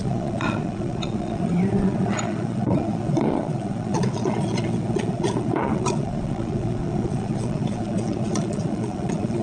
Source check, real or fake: fake